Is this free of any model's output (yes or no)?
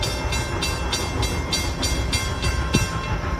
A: yes